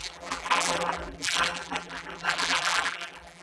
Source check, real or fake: fake